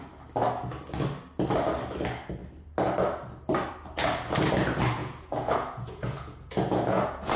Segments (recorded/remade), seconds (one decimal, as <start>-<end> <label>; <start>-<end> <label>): 0.0-5.0 recorded; 5.0-7.4 remade